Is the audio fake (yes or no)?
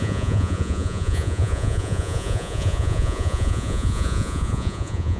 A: yes